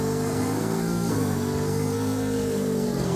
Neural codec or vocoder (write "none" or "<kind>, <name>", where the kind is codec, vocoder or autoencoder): codec, SNAC